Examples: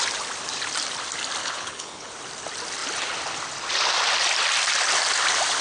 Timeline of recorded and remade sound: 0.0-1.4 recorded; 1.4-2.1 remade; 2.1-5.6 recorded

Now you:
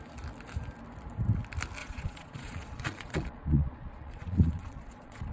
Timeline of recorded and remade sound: 0.0-1.8 recorded; 1.8-5.3 remade

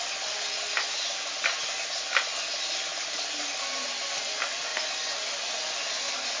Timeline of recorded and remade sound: 0.0-2.8 recorded; 2.8-3.5 remade; 3.5-6.4 recorded

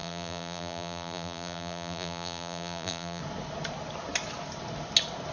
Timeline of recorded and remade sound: 0.0-3.2 remade; 3.2-5.3 recorded

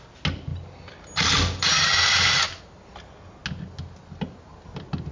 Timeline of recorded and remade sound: 0.0-5.1 recorded